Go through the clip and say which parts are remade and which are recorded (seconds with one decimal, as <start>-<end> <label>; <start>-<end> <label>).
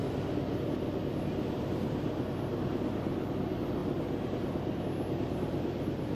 0.0-6.1 recorded